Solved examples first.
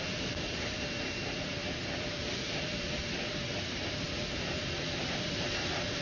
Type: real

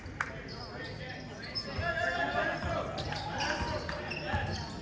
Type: real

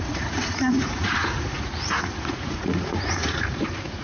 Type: fake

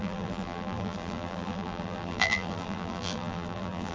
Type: fake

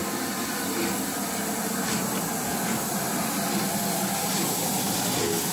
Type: real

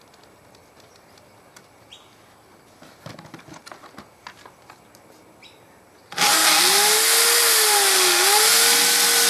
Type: real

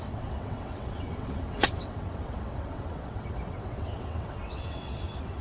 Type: fake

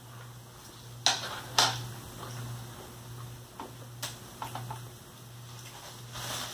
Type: real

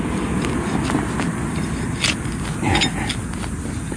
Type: real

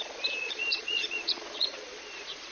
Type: fake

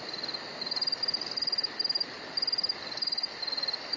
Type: real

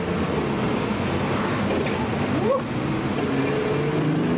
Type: real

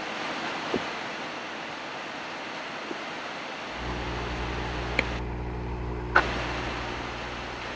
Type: real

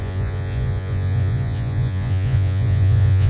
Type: fake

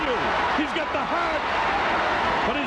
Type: real